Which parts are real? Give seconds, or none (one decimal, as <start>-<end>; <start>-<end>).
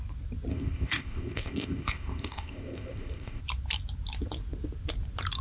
0.0-0.5; 3.4-5.4